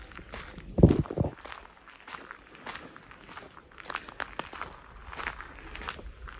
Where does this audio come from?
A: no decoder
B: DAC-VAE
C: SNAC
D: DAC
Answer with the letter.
A